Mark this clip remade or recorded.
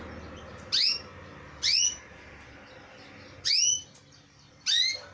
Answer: recorded